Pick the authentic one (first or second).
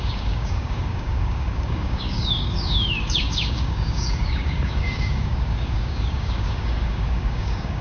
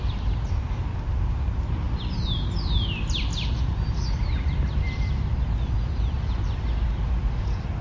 second